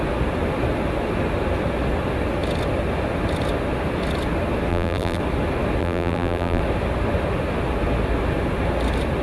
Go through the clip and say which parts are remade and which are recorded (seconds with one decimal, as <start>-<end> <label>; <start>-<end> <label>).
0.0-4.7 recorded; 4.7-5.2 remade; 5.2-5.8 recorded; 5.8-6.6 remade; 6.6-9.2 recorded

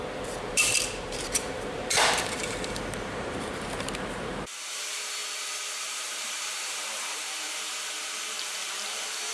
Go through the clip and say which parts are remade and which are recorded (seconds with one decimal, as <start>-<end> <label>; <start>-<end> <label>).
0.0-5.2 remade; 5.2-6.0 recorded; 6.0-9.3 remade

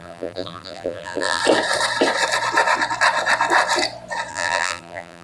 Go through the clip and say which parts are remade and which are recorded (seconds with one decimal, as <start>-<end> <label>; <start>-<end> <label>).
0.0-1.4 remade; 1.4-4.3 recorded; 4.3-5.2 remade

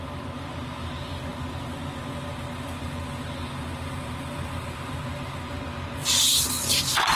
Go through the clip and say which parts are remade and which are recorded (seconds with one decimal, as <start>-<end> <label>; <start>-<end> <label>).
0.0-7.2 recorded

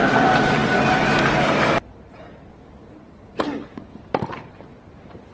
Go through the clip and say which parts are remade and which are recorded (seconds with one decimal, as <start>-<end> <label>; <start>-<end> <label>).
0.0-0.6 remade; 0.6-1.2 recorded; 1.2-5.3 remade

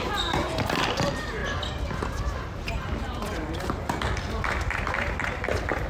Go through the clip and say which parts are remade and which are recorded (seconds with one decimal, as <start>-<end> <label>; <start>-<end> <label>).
0.0-5.9 recorded

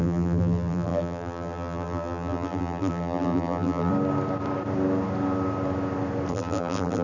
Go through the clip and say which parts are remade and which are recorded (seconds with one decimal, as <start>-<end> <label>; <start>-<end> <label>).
0.0-3.9 remade; 3.9-6.3 recorded; 6.3-7.0 remade